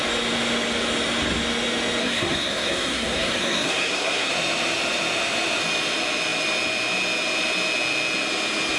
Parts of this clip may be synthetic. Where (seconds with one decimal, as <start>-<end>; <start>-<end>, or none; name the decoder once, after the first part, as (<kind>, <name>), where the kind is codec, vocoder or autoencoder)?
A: 2.0-4.3 (codec, SNAC)